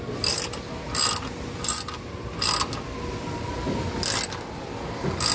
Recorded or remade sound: recorded